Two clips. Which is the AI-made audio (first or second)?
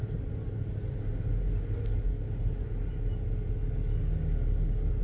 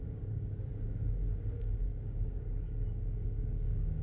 second